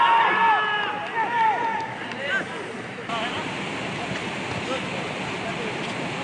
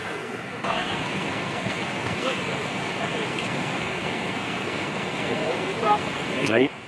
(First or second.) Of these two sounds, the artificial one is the second